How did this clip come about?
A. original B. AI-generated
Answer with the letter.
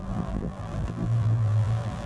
B